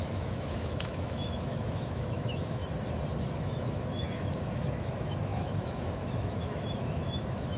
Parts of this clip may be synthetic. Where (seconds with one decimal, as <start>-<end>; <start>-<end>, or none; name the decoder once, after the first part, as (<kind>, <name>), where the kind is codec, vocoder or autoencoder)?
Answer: 0.0-2.6 (autoencoder, DAC-VAE); 3.3-7.6